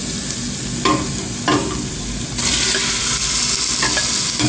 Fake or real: real